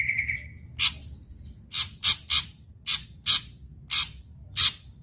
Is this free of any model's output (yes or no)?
yes